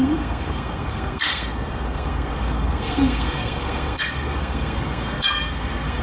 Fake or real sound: fake